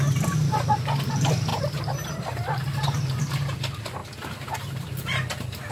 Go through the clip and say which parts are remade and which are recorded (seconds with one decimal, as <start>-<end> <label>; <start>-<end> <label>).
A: 0.0-1.5 recorded; 1.5-3.2 remade; 3.2-5.7 recorded